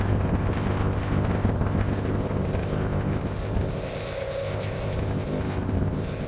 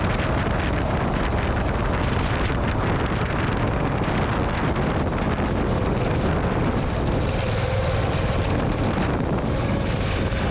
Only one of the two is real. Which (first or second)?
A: second